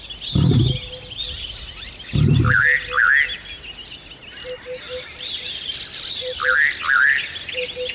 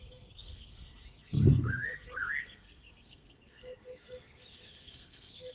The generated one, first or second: second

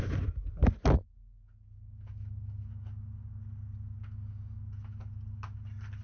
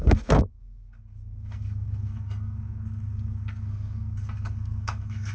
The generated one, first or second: second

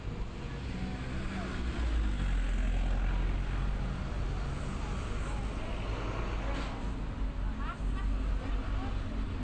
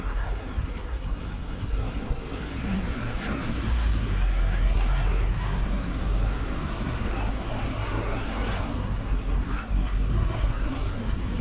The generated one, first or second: second